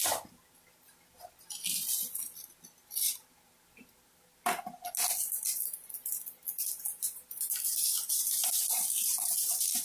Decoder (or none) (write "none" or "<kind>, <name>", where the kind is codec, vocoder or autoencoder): none